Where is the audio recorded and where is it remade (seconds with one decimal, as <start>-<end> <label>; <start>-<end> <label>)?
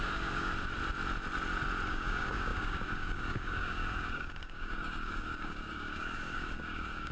0.0-0.5 remade; 0.5-1.9 recorded; 1.9-7.1 remade